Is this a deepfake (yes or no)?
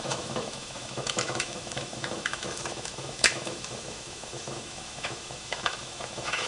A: yes